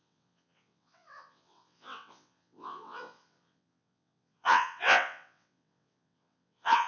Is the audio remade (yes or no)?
yes